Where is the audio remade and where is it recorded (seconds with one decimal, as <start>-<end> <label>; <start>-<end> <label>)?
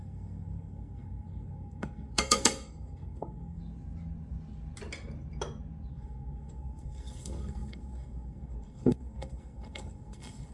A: 0.0-3.6 remade; 3.6-5.9 recorded; 5.9-10.5 remade